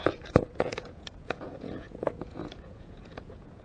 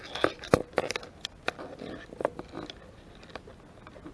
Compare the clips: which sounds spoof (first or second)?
first